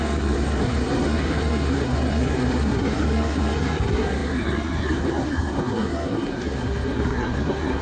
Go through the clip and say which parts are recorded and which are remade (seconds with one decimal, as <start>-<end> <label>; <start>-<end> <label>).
0.0-7.8 remade